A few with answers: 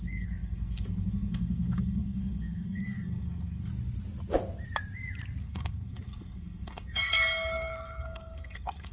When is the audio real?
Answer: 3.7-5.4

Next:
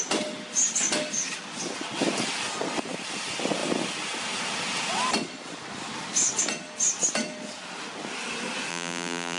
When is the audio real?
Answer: 0.0-8.7

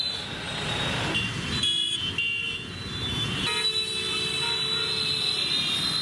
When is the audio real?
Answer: 0.0-6.0

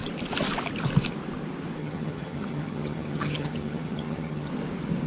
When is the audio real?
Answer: 0.0-1.8; 4.5-5.1

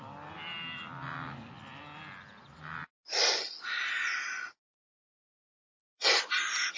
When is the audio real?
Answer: 0.0-6.8